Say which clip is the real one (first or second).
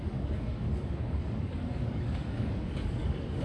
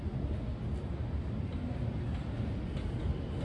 second